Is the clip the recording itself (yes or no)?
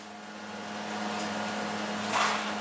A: yes